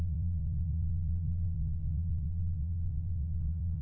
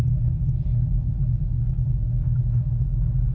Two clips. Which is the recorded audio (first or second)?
second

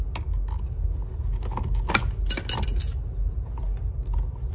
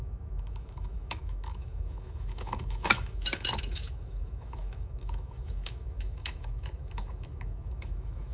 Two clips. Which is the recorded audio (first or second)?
first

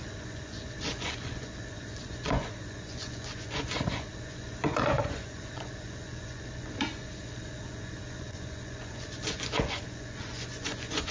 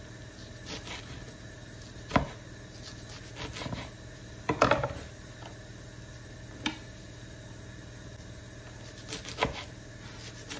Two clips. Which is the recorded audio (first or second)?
second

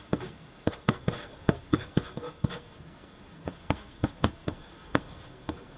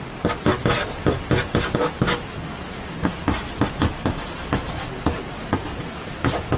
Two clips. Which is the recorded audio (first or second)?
second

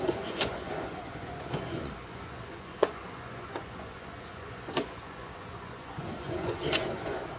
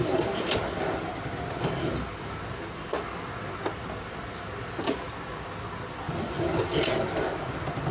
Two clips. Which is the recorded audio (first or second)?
second